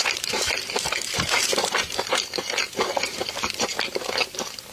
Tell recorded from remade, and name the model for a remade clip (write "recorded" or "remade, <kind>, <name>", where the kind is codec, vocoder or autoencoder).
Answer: remade, vocoder, BigVGAN v2